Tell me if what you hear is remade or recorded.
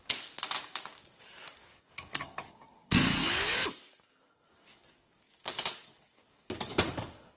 remade